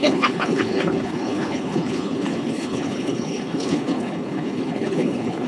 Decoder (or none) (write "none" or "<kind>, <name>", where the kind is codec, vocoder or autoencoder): codec, HILCodec